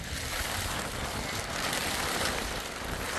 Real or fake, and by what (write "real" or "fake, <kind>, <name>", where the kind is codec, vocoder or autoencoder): real